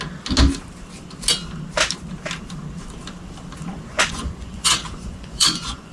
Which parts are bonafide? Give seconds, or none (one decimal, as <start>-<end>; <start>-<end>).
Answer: 0.0-3.9

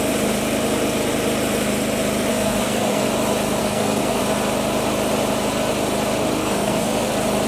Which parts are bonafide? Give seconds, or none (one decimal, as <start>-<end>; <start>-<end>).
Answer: 0.0-2.3; 3.1-3.6; 4.2-6.4; 7.1-7.5

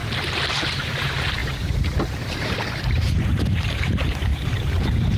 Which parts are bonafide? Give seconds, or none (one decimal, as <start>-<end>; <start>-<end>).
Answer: none

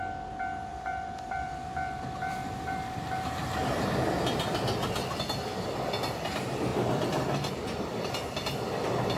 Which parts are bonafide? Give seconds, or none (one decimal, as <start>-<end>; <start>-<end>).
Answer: 0.0-0.7; 3.1-9.2

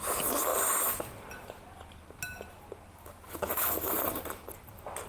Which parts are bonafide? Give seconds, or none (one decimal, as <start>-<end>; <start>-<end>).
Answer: 0.0-2.9; 3.9-5.1

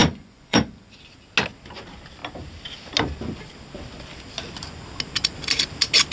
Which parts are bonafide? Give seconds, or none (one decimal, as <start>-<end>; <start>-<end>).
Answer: 1.0-6.1